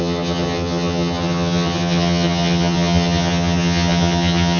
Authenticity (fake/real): fake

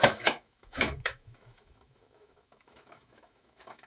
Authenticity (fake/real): fake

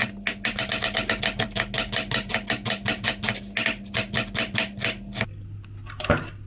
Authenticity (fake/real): real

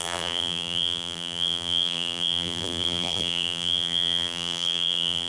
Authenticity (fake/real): fake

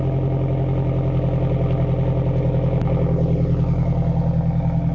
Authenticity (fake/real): real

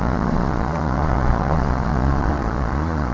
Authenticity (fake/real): fake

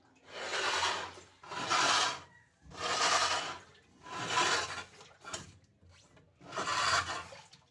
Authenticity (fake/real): real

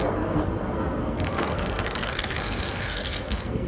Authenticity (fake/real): fake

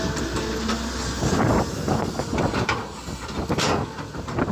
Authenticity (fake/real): real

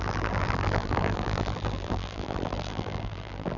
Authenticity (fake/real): fake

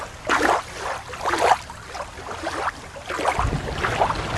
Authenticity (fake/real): real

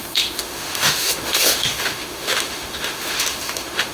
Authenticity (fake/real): fake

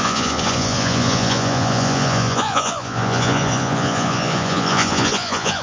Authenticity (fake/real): fake